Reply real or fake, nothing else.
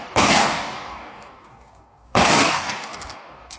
fake